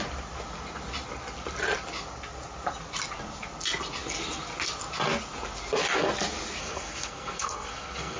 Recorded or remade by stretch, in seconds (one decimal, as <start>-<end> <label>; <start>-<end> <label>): 0.0-6.6 recorded; 6.6-8.2 remade